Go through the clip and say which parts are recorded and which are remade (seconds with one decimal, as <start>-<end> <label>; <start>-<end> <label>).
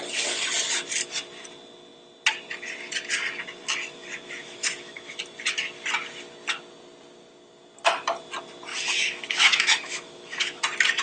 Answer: 0.0-4.4 recorded; 4.4-5.2 remade; 5.2-8.7 recorded; 8.7-10.6 remade; 10.6-11.0 recorded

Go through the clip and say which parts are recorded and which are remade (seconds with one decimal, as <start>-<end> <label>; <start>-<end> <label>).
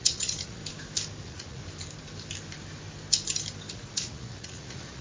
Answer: 0.0-0.6 remade; 0.6-1.2 recorded; 1.2-1.6 remade; 1.6-3.7 recorded; 3.7-5.0 remade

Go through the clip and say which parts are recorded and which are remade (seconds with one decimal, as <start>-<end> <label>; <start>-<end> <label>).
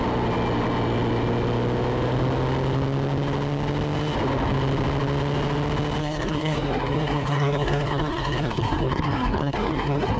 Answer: 0.0-6.0 recorded; 6.0-10.2 remade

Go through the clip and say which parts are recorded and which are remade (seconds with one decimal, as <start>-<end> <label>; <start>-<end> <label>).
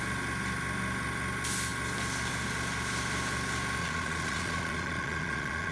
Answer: 0.0-3.8 recorded; 3.8-5.7 remade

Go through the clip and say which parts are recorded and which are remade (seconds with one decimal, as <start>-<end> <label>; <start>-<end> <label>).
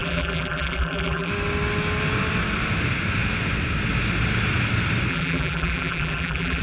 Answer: 0.0-1.3 remade; 1.3-5.1 recorded; 5.1-6.6 remade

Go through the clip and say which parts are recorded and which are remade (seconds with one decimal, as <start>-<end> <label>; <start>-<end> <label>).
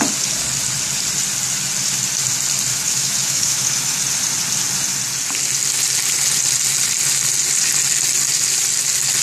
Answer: 0.0-2.7 recorded; 2.7-4.0 remade; 4.0-9.2 recorded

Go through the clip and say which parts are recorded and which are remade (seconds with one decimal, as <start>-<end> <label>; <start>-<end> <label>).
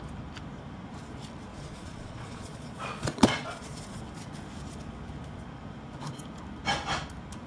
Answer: 0.0-1.5 recorded; 1.5-4.0 remade; 4.0-7.5 recorded